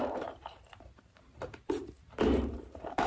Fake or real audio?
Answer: fake